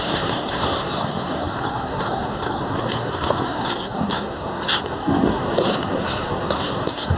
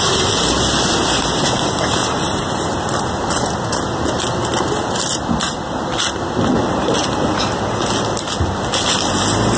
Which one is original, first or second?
second